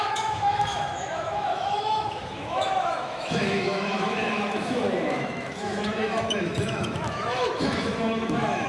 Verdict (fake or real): fake